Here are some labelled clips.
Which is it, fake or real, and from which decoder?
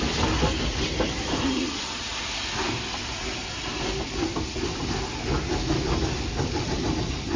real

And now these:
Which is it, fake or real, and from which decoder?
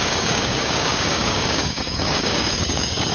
fake, codec, DAC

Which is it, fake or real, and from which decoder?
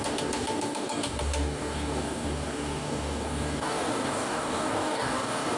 fake, codec, DAC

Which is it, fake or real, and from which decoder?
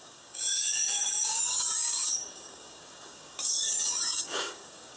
fake, codec, DAC